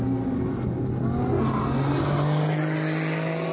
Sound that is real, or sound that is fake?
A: real